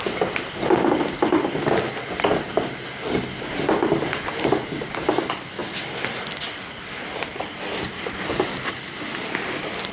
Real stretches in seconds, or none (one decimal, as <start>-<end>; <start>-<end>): 0.0-9.9